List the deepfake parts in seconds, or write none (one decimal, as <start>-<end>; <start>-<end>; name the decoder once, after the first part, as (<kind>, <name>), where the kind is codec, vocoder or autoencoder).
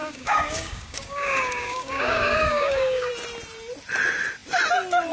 0.0-3.1 (codec, DAC)